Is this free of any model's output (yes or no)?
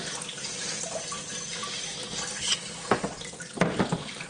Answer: yes